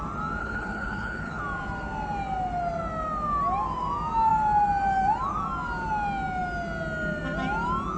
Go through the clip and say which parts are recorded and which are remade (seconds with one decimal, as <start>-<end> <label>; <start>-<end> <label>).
0.0-0.4 recorded; 0.4-1.4 remade; 1.4-8.0 recorded